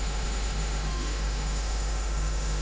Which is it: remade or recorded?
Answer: remade